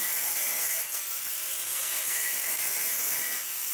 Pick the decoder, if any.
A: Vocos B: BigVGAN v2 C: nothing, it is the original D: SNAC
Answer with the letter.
D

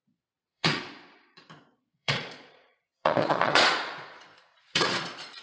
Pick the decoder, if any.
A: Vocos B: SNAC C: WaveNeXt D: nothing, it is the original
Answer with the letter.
A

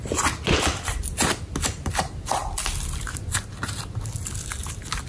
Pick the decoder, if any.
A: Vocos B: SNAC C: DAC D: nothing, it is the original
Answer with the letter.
D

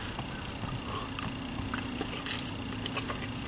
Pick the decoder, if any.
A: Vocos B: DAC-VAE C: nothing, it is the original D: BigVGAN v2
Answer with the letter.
C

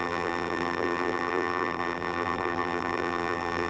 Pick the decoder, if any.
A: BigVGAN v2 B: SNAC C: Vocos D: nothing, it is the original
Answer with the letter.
A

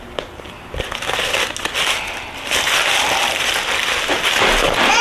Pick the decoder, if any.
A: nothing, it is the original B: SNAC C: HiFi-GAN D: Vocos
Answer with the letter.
A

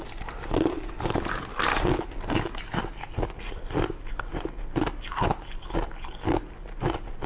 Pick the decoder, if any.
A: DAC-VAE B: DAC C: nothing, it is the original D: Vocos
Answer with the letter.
C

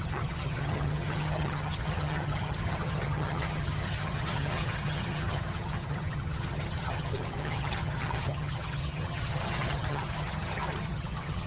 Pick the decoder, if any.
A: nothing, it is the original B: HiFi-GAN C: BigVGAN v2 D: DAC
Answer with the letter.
B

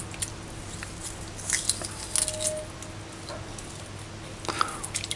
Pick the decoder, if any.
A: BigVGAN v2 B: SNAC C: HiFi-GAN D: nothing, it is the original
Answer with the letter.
D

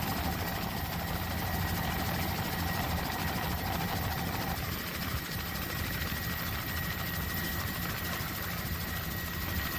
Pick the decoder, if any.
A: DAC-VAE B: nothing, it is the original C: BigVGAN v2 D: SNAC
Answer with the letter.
B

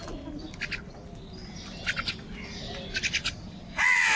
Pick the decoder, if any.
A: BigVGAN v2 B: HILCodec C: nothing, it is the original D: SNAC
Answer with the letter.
C